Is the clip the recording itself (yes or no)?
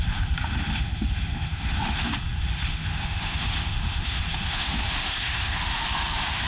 no